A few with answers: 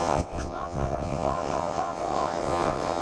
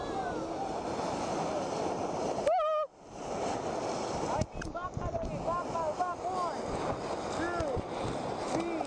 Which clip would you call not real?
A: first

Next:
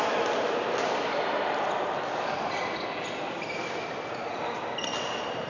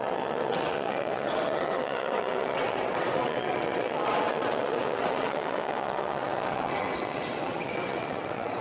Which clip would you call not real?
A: second